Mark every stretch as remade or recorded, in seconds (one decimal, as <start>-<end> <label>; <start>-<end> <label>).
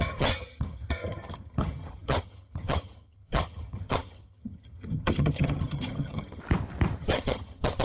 0.0-6.4 remade; 6.4-7.0 recorded; 7.0-7.8 remade